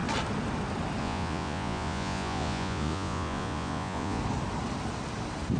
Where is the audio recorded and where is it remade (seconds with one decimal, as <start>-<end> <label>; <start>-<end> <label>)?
0.0-1.0 recorded; 1.0-4.2 remade; 4.2-5.6 recorded